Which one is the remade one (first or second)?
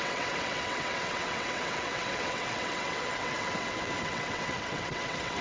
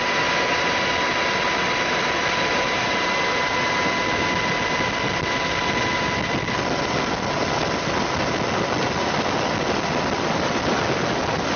first